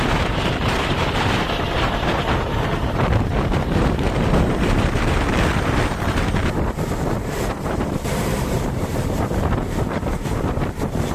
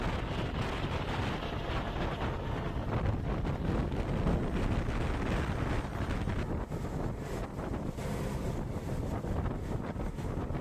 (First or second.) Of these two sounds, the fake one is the first